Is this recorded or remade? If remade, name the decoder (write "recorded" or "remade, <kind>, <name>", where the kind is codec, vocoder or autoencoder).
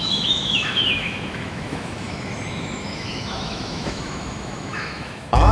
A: remade, autoencoder, DAC-VAE